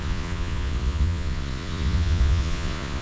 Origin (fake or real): fake